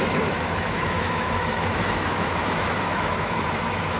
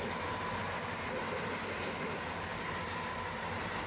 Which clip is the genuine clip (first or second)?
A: second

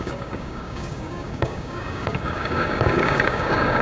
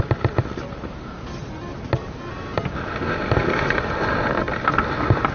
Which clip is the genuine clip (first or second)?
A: second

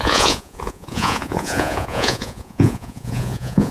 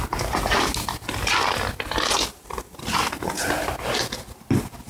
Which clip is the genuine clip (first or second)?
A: second